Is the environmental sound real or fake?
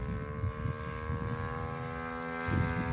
real